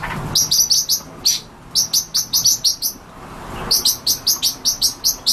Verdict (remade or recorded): recorded